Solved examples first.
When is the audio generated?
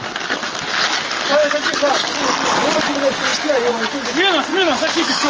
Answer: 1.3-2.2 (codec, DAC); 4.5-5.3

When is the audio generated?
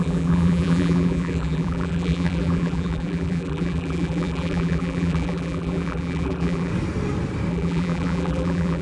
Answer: 0.0-6.7 (vocoder, BigVGAN v2); 7.5-8.8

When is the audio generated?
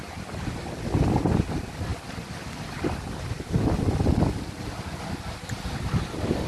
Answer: none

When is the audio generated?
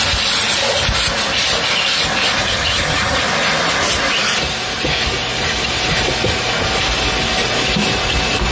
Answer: 2.4-3.2 (vocoder, HiFi-GAN)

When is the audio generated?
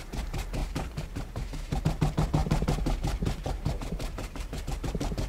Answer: 0.0-5.3 (vocoder, BigVGAN v2)